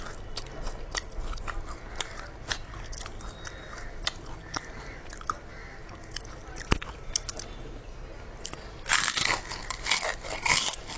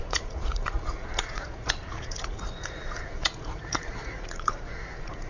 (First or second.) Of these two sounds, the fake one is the second